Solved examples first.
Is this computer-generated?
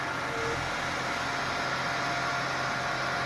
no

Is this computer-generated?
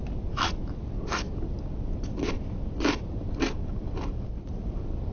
no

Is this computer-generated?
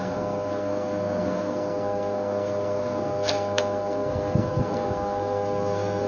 yes